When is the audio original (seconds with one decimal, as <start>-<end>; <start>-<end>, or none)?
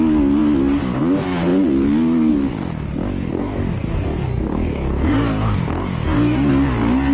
0.0-3.3; 6.5-7.1